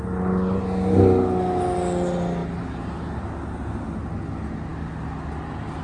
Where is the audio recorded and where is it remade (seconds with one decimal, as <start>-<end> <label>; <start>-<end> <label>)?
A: 0.0-5.8 recorded